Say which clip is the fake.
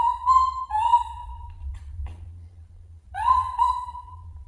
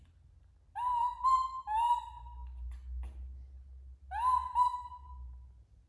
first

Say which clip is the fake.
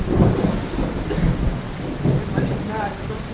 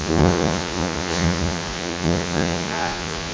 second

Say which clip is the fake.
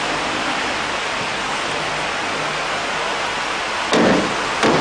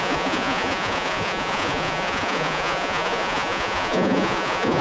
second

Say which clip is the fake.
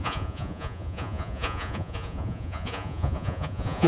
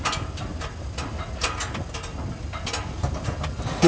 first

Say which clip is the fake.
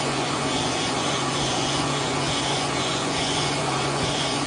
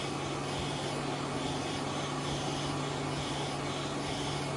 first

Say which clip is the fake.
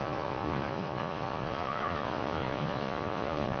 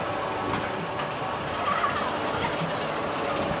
first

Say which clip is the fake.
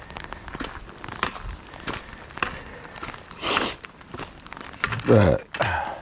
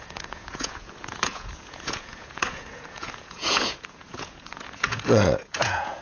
second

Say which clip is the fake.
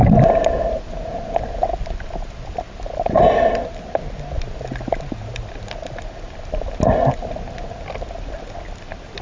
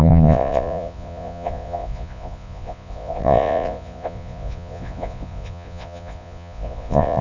second